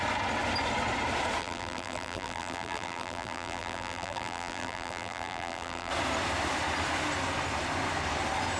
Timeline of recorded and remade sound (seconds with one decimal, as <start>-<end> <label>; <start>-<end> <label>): 0.0-1.4 recorded; 1.4-5.9 remade; 5.9-8.6 recorded